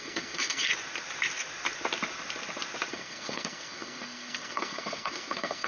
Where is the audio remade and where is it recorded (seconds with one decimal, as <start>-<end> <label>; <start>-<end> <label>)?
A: 0.0-0.7 remade; 0.7-2.9 recorded; 2.9-5.7 remade